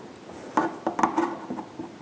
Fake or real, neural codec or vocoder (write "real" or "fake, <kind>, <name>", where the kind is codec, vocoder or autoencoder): real